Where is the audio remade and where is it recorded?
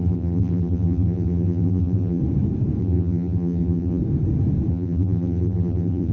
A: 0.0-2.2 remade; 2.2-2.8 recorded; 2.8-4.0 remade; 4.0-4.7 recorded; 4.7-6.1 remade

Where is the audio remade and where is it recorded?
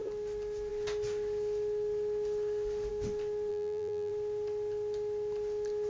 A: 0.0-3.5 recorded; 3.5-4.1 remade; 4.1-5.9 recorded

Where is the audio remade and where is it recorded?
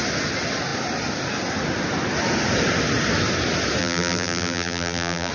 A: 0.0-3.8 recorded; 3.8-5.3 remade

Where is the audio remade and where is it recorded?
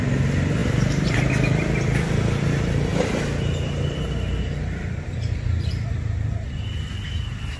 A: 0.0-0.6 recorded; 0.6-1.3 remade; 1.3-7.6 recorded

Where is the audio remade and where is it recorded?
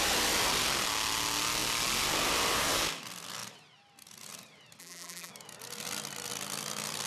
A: 0.0-4.8 recorded; 4.8-5.3 remade; 5.3-7.1 recorded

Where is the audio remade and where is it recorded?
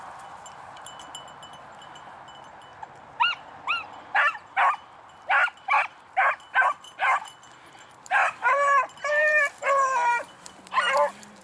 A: 0.0-2.7 recorded; 2.7-3.9 remade; 3.9-8.2 recorded; 8.2-11.4 remade